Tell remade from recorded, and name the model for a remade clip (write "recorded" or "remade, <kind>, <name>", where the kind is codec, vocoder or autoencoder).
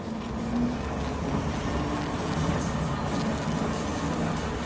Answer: recorded